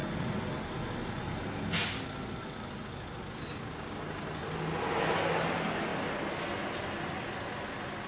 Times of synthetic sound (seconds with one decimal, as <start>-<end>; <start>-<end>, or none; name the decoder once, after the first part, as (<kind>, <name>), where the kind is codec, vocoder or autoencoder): 3.5-4.0 (codec, DAC)